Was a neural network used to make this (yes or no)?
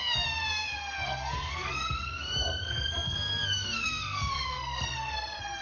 yes